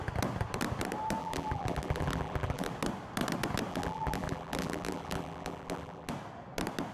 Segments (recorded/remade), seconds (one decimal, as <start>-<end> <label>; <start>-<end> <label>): 0.0-1.2 recorded; 1.2-2.7 remade; 2.7-3.7 recorded; 3.7-6.1 remade; 6.1-6.9 recorded